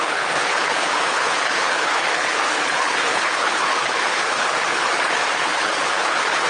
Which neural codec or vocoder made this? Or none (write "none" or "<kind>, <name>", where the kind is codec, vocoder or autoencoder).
codec, HILCodec